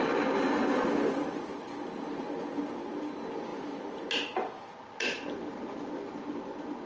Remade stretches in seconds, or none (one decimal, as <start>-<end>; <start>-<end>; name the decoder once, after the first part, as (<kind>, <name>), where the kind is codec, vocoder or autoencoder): none